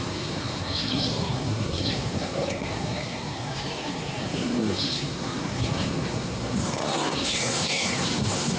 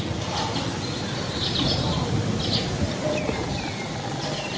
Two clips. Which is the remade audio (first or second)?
first